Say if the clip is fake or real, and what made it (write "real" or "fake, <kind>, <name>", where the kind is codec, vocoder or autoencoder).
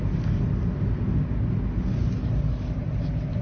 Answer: real